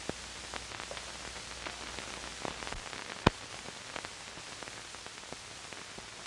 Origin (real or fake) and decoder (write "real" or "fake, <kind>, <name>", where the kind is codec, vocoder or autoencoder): real